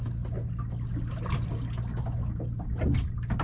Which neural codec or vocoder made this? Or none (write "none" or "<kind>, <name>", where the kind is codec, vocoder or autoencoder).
none